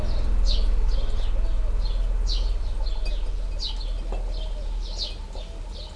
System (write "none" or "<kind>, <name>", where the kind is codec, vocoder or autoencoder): none